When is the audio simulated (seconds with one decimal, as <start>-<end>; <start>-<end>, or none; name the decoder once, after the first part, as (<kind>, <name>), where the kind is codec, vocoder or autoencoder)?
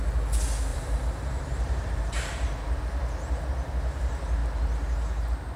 0.7-2.8 (vocoder, BigVGAN v2)